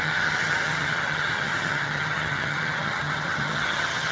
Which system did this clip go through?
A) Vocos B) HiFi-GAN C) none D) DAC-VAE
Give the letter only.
B